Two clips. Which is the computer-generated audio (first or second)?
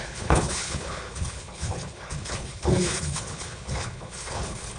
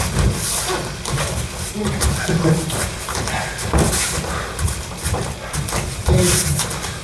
first